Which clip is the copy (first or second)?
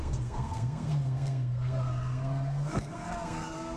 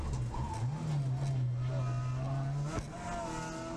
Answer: first